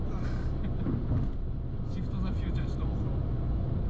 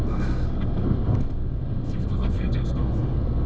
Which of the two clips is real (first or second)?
first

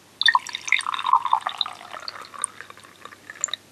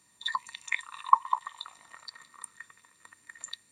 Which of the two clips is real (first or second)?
first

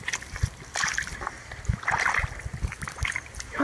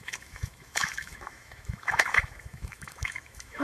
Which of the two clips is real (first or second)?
first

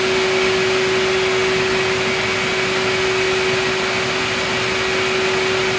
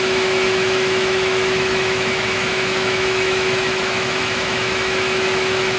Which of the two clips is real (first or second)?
first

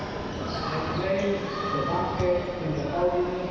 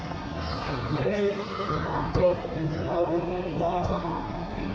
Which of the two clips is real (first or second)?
first